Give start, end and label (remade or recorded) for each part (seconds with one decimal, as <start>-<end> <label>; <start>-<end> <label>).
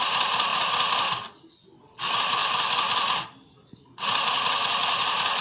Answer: 0.0-5.4 recorded